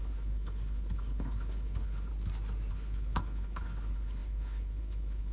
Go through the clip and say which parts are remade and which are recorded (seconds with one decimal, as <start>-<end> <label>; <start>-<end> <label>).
0.0-2.1 remade; 2.1-2.7 recorded; 2.7-5.3 remade